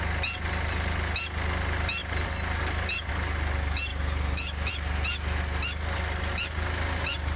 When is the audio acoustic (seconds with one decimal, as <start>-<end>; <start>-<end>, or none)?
0.0-2.0; 3.1-3.9; 4.7-7.4